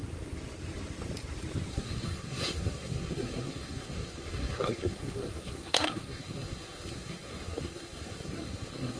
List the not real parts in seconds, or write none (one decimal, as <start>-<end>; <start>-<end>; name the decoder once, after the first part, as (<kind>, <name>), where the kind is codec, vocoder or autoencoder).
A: 1.7-9.0 (codec, SNAC)